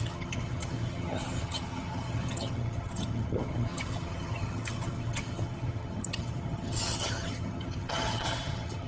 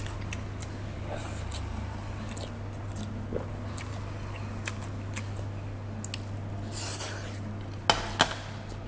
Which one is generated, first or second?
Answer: first